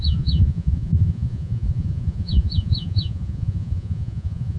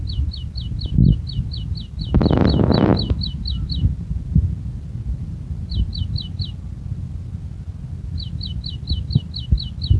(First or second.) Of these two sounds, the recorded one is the second